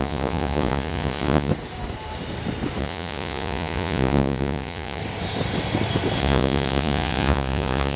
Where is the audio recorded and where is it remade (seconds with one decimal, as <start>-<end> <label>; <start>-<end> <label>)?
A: 0.0-1.5 remade; 1.5-2.8 recorded; 2.8-5.0 remade; 5.0-6.2 recorded; 6.2-8.0 remade